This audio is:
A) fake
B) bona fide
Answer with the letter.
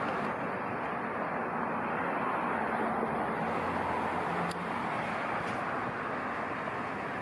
B